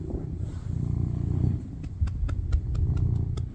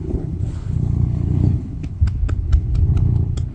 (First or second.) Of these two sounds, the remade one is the second